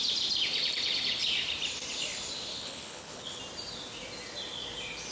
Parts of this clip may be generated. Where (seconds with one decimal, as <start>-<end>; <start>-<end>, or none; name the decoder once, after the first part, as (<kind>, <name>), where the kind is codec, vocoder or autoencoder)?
2.5-3.4 (codec, HILCodec)